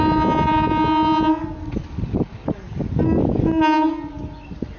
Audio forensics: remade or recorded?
recorded